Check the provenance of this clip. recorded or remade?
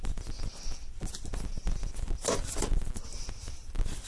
recorded